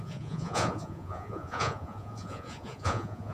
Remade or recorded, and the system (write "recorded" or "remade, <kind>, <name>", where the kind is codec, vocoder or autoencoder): remade, vocoder, Vocos